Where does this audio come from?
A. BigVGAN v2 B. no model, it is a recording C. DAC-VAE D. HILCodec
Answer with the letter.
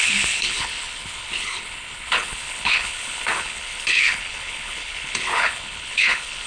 D